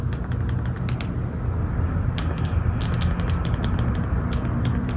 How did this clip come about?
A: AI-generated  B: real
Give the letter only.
B